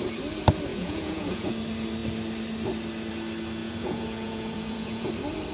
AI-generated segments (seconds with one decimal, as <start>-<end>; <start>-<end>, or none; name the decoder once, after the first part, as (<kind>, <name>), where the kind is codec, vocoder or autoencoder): 0.7-1.5 (vocoder, Vocos); 3.6-5.1